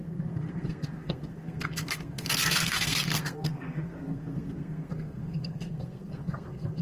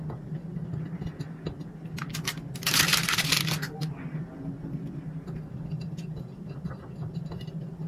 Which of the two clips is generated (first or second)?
first